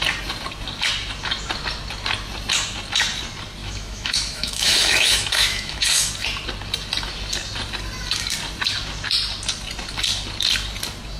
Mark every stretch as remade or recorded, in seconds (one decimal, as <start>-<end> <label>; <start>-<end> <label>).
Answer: 0.0-3.6 recorded; 3.6-6.1 remade; 6.1-11.2 recorded